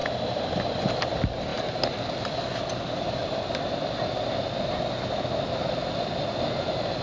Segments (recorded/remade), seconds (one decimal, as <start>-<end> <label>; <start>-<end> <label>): 0.0-7.0 recorded